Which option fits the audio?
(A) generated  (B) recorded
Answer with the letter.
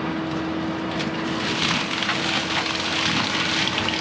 B